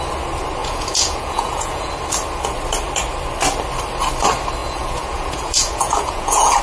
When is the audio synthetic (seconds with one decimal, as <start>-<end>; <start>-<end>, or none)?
0.6-1.9; 4.6-6.6